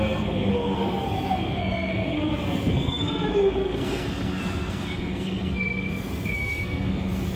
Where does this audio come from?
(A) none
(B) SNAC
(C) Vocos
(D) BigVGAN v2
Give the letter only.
B